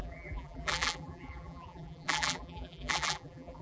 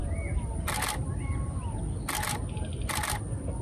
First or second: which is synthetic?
first